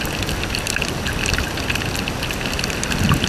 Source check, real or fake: real